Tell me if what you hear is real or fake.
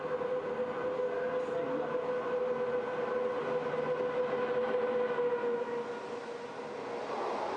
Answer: real